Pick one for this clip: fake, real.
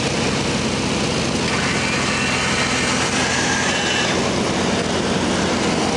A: real